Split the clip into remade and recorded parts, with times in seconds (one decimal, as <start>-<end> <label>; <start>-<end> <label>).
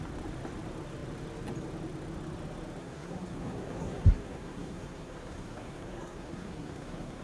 0.0-2.8 recorded; 2.8-7.2 remade